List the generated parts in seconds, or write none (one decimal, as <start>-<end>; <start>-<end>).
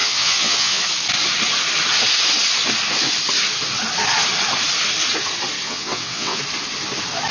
0.0-0.8; 5.6-6.4